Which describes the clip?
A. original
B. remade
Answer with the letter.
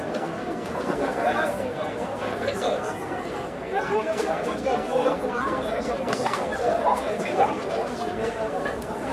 B